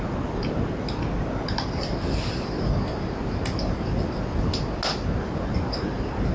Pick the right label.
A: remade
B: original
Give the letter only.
B